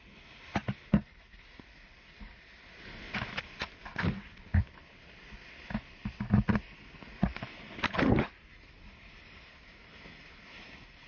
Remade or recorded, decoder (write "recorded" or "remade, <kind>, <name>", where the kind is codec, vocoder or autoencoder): recorded